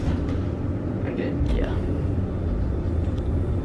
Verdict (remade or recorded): recorded